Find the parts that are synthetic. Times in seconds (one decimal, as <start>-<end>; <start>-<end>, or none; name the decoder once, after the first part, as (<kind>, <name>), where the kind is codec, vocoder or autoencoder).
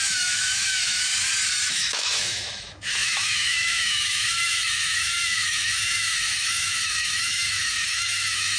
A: 0.0-1.1 (autoencoder, DAC-VAE); 1.6-8.6